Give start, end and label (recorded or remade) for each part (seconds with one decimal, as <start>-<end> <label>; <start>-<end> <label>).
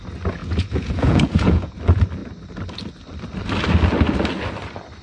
0.0-0.4 recorded; 0.4-1.8 remade; 1.8-5.0 recorded